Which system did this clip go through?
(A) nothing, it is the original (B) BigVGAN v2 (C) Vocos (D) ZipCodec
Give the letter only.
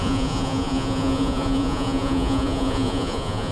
C